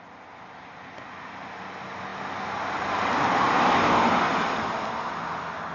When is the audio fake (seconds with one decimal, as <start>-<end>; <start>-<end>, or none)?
none